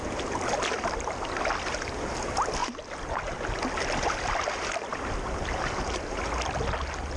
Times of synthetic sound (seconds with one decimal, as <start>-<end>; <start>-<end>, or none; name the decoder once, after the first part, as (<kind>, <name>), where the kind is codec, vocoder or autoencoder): none